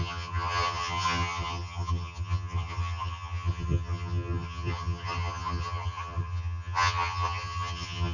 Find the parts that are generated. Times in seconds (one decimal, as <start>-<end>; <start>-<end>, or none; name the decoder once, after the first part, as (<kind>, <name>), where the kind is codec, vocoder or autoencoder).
0.0-8.1 (vocoder, HiFi-GAN)